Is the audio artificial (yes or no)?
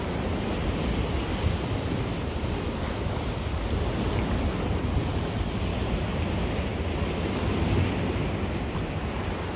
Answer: no